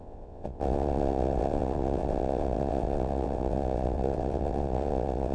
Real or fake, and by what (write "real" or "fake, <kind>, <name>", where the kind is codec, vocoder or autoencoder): fake, vocoder, WaveNeXt